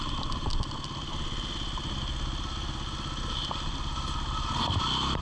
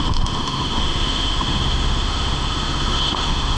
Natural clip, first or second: first